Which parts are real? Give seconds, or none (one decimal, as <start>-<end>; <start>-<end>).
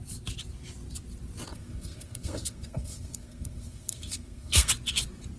0.0-1.5; 4.7-5.4